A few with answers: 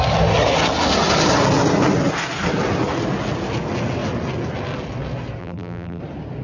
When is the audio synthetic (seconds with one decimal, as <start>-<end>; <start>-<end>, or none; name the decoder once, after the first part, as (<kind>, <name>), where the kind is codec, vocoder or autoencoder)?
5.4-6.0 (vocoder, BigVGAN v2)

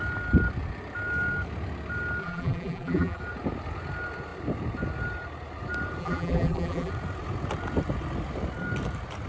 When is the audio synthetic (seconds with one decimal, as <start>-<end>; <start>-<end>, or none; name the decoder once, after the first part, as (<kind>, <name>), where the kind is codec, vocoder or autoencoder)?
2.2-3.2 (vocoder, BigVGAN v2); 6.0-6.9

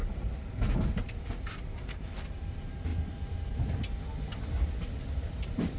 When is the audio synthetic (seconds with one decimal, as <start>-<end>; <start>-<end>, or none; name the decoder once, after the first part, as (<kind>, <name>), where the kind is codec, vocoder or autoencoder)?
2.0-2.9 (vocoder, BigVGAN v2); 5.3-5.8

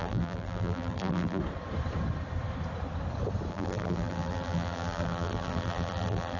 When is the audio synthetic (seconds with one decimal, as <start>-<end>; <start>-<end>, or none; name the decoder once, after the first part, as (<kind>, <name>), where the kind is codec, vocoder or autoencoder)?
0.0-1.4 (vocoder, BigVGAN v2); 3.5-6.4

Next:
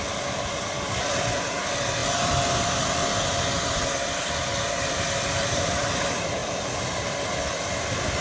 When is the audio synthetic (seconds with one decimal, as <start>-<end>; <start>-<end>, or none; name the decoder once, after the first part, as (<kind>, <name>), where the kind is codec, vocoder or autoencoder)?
0.0-8.2 (vocoder, BigVGAN v2)

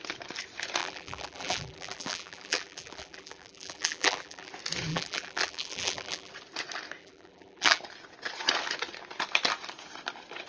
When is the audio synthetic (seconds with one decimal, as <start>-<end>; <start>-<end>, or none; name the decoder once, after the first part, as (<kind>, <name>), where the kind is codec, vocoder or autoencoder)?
0.8-4.5 (vocoder, BigVGAN v2); 4.9-6.3; 7.0-7.8

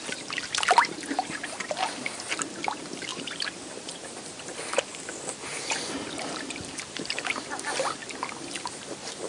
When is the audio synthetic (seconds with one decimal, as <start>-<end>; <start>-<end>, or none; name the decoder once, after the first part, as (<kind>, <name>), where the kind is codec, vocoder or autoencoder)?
3.1-3.8 (vocoder, BigVGAN v2); 5.5-7.1